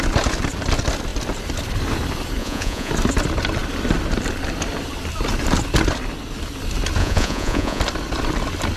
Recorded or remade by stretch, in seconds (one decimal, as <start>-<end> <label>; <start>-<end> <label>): 0.0-2.4 recorded; 2.4-2.9 remade; 2.9-7.0 recorded; 7.0-7.8 remade; 7.8-8.8 recorded